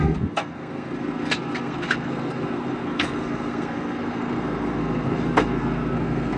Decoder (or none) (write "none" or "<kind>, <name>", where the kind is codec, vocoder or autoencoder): codec, SNAC